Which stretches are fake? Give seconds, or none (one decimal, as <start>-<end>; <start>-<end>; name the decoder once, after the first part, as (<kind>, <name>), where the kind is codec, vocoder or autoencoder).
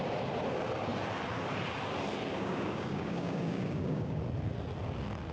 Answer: 2.3-4.2 (codec, DAC)